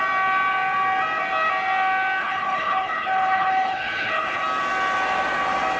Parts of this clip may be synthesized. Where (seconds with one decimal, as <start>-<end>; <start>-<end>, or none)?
2.2-4.4